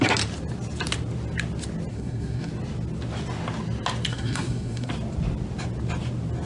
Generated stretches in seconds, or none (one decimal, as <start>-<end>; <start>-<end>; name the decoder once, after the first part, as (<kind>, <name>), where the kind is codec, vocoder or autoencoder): 1.9-2.5 (codec, SNAC); 4.1-4.9